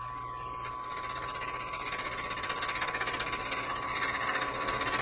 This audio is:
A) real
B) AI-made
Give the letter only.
A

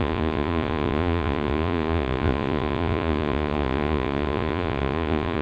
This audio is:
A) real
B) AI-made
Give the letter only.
B